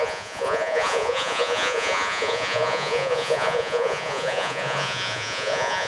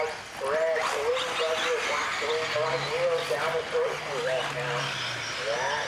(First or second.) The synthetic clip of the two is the first